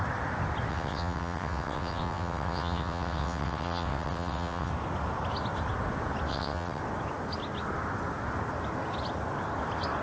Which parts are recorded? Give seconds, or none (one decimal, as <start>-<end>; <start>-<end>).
0.0-0.7; 4.7-6.3; 6.8-10.0